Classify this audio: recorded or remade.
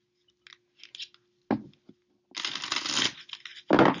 recorded